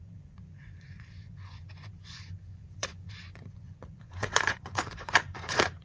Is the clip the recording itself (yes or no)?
no